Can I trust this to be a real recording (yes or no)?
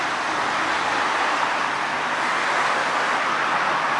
yes